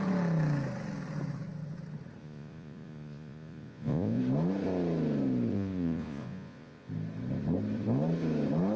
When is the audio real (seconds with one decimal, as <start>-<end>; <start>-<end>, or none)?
0.0-2.2; 4.2-5.5; 6.9-8.8